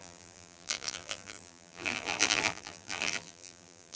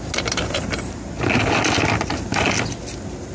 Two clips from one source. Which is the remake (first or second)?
first